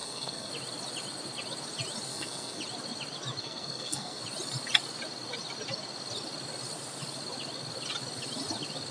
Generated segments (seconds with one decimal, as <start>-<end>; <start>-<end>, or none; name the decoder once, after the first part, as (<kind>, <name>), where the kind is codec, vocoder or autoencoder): 0.0-0.5 (codec, SNAC); 2.1-2.6; 3.4-4.2